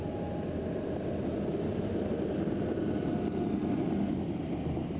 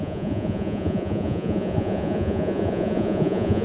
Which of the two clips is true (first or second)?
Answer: first